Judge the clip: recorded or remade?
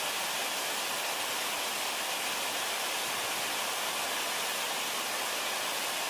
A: recorded